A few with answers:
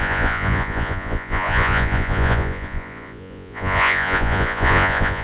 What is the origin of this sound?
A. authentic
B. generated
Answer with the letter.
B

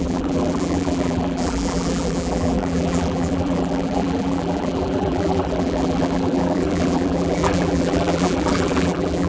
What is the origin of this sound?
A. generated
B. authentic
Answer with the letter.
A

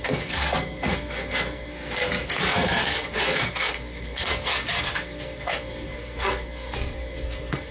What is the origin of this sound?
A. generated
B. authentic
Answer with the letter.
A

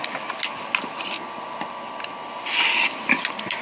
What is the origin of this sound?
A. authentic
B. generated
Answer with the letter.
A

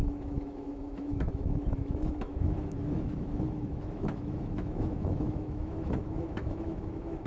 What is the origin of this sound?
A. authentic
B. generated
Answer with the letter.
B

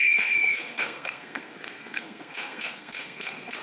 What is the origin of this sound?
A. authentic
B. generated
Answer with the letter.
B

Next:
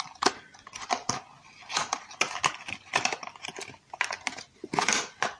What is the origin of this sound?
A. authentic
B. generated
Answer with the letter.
A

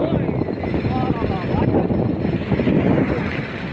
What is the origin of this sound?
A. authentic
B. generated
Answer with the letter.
A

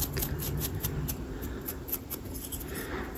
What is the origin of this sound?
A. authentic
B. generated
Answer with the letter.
A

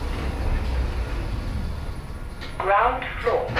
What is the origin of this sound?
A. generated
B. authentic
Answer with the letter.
B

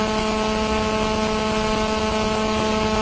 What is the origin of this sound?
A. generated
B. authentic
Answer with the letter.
B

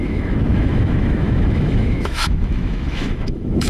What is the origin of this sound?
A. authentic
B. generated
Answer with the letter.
B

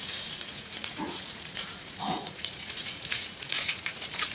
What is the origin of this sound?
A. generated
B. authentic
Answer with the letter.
A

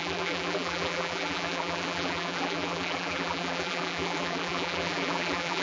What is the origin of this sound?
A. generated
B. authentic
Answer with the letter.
A